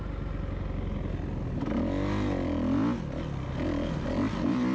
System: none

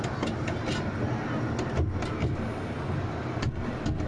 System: none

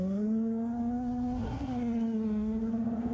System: codec, SNAC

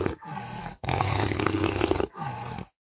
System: codec, SNAC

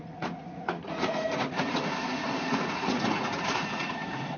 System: vocoder, Vocos